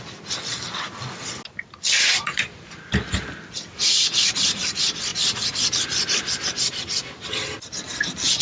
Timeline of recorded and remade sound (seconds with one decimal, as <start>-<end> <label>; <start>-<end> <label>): 0.0-8.4 recorded